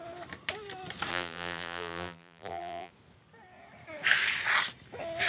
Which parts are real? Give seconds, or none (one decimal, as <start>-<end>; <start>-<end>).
0.0-1.1; 2.9-5.3